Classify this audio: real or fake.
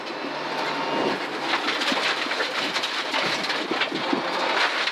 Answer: real